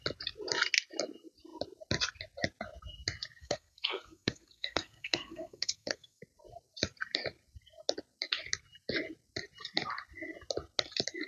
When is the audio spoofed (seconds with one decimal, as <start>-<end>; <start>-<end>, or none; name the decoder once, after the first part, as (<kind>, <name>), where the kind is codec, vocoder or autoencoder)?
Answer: 3.4-6.2 (codec, SNAC)